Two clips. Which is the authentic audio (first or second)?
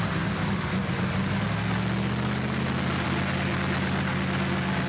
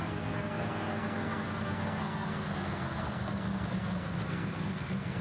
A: first